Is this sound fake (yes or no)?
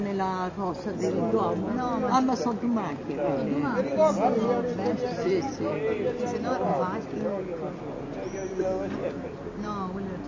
no